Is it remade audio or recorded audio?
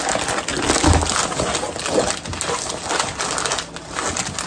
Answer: recorded